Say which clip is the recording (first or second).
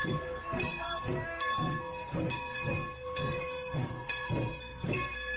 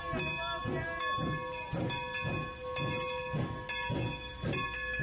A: second